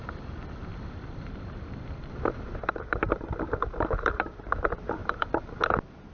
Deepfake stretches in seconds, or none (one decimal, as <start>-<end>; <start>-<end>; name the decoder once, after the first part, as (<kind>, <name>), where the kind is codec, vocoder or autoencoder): 0.7-4.4 (vocoder, BigVGAN v2); 5.0-5.6